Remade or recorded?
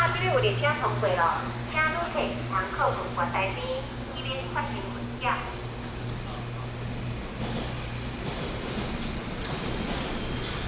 recorded